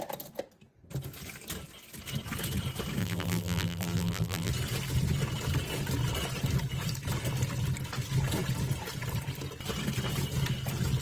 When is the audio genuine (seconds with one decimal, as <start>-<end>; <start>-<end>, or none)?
0.0-3.0; 4.5-11.0